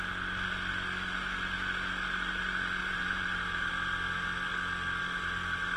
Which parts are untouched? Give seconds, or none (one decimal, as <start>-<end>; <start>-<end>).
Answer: 0.0-2.8; 3.7-5.8

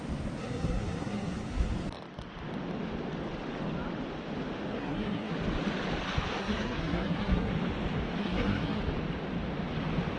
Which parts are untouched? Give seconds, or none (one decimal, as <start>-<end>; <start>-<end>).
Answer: 0.0-0.4; 1.7-4.7; 5.3-6.4; 7.5-8.2; 8.8-10.2

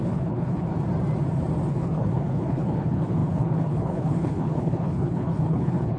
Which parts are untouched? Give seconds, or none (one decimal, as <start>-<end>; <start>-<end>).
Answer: 0.7-1.7